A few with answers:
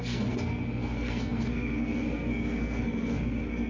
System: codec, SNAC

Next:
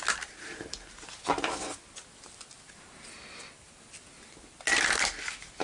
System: none